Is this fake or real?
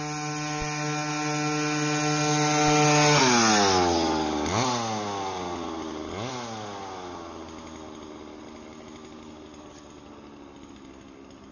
real